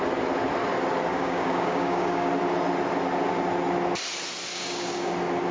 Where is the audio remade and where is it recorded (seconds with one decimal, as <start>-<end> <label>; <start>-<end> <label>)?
0.0-1.1 recorded; 1.1-2.3 remade; 2.3-4.5 recorded; 4.5-5.1 remade; 5.1-5.5 recorded